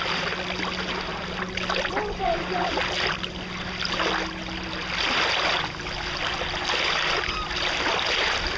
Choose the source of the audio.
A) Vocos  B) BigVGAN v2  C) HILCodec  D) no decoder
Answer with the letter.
D